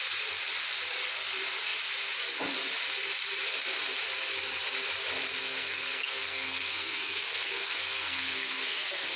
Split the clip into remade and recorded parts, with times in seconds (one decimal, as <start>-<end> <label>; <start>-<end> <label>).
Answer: 0.0-5.4 recorded; 5.4-9.2 remade